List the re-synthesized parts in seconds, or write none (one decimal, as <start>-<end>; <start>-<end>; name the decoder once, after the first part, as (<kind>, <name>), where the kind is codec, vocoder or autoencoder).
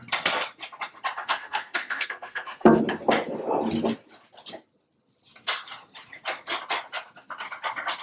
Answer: 1.2-2.8 (codec, SNAC)